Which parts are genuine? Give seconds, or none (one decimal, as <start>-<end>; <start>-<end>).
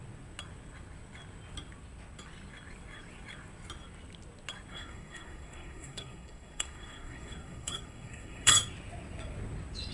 0.0-4.7; 8.5-9.9